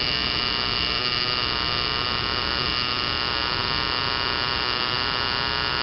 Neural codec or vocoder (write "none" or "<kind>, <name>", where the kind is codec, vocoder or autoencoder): none